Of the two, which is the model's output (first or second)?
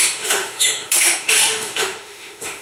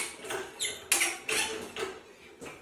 first